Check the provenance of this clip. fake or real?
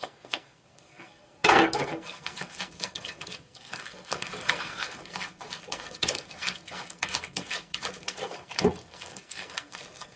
fake